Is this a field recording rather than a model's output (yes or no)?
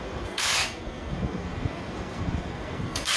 no